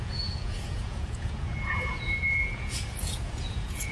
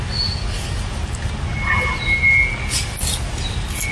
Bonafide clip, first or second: second